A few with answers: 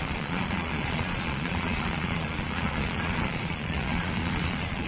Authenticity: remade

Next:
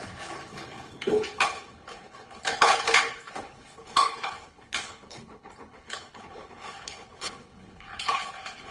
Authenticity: remade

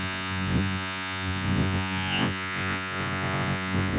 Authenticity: remade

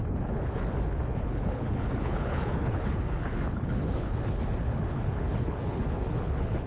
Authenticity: remade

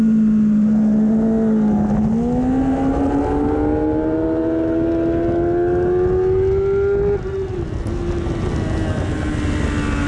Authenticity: recorded